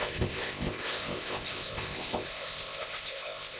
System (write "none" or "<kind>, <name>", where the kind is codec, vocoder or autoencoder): codec, ZipCodec